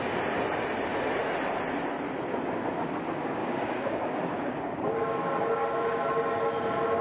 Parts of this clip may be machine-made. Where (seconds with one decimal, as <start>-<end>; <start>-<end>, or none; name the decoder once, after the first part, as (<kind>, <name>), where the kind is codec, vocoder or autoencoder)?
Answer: 3.4-6.0 (codec, DAC)